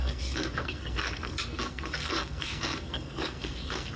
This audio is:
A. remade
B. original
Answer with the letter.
A